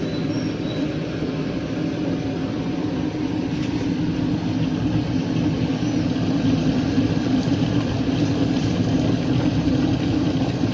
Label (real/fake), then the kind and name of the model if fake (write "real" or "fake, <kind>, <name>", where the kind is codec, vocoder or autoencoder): real